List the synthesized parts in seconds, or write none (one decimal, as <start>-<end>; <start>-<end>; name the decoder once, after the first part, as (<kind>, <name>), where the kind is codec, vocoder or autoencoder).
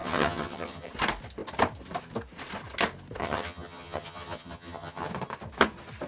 0.0-0.9 (vocoder, HiFi-GAN); 3.2-5.1